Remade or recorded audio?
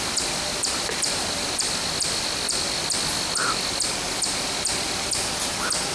recorded